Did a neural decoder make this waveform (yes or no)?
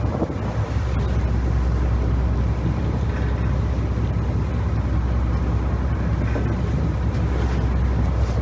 no